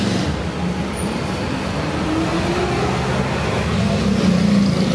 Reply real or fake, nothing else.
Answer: real